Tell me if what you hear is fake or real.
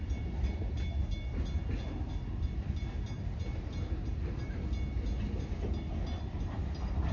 real